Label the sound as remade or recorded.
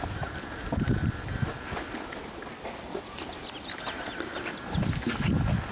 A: recorded